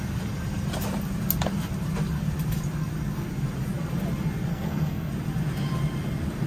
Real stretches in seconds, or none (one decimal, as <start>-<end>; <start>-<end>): 0.0-4.5; 5.1-6.5